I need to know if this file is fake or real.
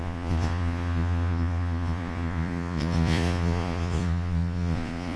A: fake